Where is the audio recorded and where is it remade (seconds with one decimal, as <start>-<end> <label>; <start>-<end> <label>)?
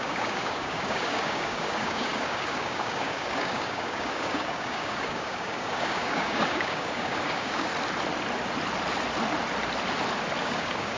0.0-7.7 remade; 7.7-10.4 recorded; 10.4-11.0 remade